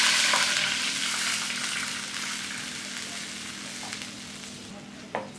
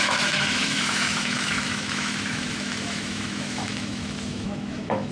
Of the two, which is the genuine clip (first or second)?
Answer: first